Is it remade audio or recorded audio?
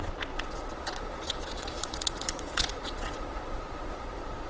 remade